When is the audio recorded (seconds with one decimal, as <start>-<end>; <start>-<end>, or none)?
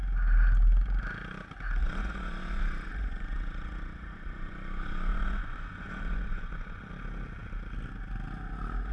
0.0-1.8; 6.9-8.9